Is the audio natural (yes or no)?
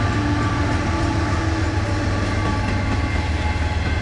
yes